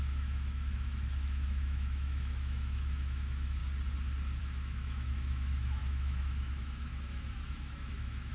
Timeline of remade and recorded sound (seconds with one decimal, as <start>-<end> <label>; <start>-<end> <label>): 0.0-3.6 remade; 3.6-4.4 recorded; 4.4-8.3 remade